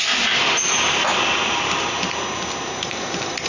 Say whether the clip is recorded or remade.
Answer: recorded